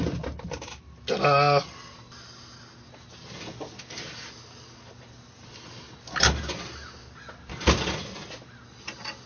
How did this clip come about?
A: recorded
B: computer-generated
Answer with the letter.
A